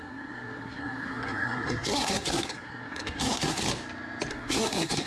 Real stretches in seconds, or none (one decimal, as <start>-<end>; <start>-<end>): 3.6-4.3